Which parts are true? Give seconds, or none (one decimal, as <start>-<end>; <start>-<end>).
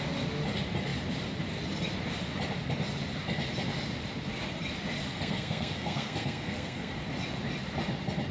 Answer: 0.0-5.1; 6.9-8.3